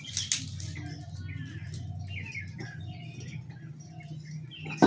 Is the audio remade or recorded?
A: recorded